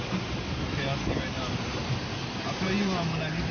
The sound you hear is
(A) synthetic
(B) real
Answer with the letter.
B